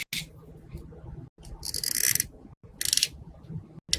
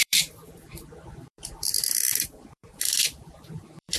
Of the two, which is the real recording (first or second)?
first